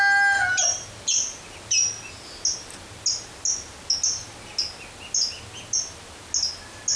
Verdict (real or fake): real